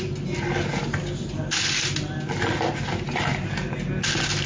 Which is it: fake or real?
real